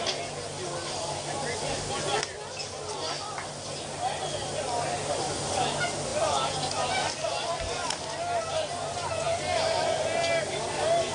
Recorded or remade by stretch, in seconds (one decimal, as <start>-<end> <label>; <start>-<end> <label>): 0.0-11.1 recorded